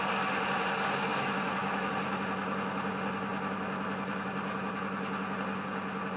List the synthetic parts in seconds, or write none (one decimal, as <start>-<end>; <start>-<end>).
1.1-1.9